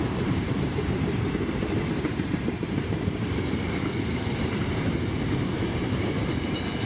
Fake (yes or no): yes